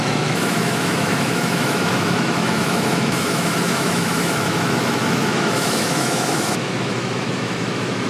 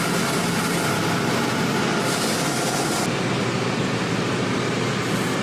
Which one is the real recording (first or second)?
second